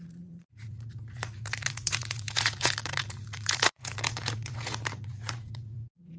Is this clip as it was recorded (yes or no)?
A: no